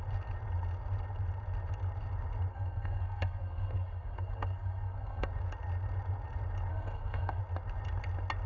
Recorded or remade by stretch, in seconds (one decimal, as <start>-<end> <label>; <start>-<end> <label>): 0.0-2.5 recorded; 2.5-5.3 remade; 5.3-6.7 recorded; 6.7-7.4 remade; 7.4-8.5 recorded